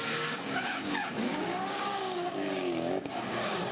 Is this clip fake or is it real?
fake